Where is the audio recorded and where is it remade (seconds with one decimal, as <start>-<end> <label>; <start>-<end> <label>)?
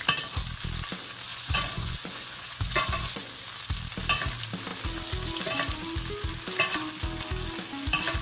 0.0-1.3 recorded; 1.3-3.3 remade; 3.3-8.2 recorded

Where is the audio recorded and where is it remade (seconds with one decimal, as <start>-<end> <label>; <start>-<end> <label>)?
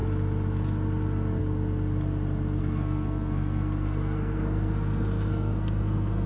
0.0-2.6 recorded; 2.6-6.3 remade